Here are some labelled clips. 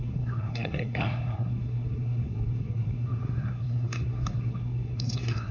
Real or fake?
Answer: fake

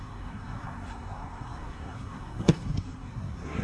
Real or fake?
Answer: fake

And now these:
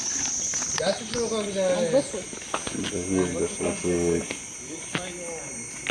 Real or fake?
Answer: real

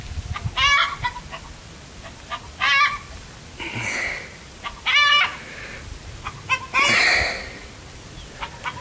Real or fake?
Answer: real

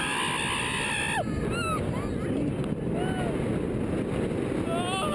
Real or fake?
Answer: real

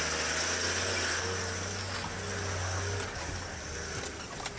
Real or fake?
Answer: real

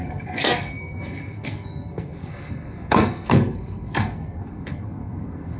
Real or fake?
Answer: fake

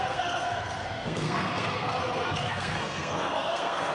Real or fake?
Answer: fake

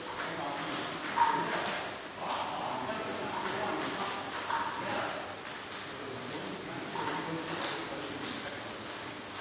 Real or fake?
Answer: real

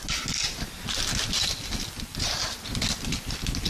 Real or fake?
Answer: real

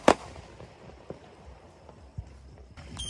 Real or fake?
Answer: real